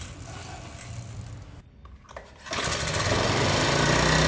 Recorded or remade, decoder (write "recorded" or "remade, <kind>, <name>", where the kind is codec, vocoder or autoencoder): recorded